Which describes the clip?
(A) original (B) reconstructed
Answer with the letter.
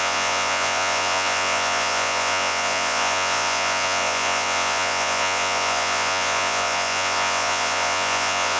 B